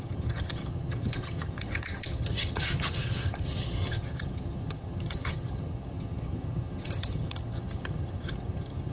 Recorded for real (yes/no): no